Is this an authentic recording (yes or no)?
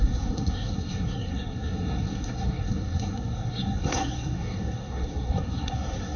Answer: no